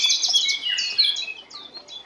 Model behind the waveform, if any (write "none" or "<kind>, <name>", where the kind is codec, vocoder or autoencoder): none